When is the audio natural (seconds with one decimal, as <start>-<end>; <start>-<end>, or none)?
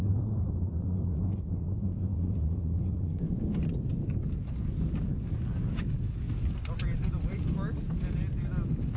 0.0-9.0